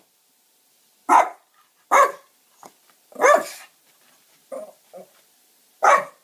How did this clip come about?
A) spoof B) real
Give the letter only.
B